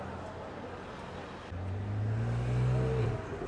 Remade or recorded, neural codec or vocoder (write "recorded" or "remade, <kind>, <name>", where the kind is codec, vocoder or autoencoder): recorded